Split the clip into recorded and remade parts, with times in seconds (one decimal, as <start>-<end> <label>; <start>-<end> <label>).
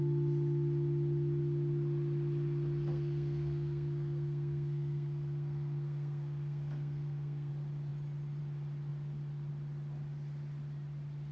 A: 0.0-2.9 recorded; 2.9-7.5 remade; 7.5-11.3 recorded